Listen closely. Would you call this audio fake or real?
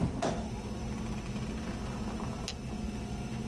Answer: real